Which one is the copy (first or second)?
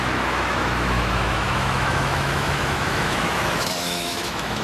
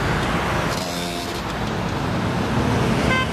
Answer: first